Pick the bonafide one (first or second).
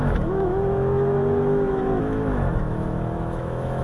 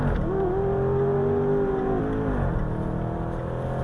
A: second